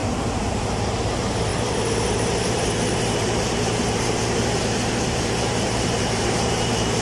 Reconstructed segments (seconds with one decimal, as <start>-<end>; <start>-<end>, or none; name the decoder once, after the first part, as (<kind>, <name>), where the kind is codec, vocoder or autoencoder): 0.5-7.0 (vocoder, BigVGAN v2)